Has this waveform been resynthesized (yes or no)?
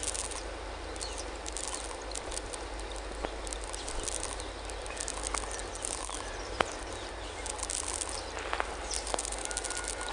no